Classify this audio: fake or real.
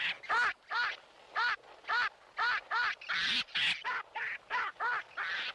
real